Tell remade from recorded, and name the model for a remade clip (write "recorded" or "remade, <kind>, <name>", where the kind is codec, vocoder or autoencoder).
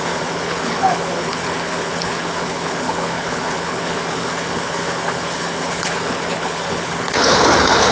remade, codec, HILCodec